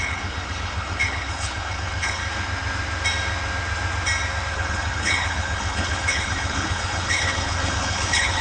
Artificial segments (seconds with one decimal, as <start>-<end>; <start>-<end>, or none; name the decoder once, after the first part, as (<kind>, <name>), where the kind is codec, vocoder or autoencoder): 0.0-2.2 (codec, HILCodec); 4.5-8.4